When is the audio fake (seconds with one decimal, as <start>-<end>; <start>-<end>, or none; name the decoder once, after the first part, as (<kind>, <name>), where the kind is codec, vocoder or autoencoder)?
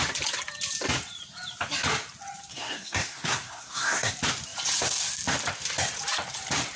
2.5-4.1 (codec, SNAC)